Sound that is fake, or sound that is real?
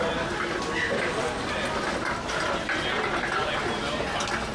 real